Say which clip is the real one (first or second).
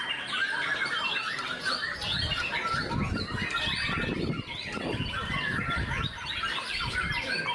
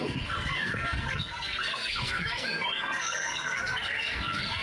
first